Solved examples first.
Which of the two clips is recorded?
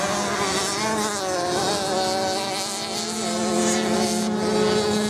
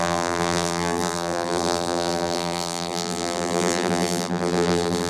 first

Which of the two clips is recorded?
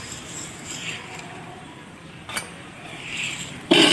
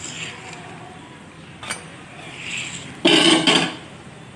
second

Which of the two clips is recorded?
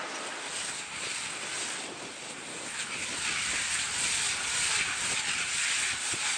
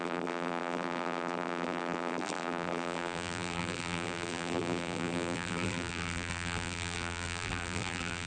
first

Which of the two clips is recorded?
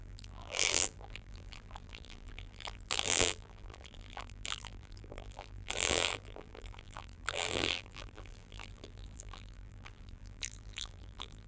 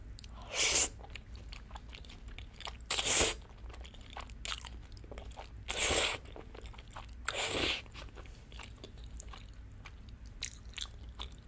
second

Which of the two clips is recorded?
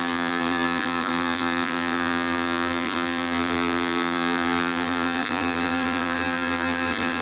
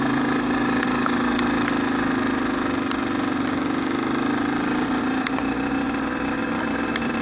second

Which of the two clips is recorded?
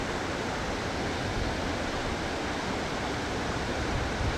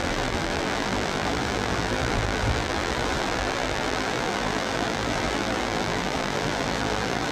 first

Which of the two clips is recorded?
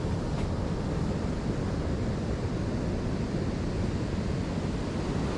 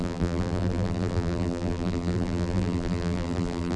first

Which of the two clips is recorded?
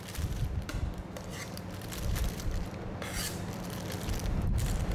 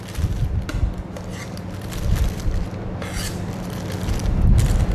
second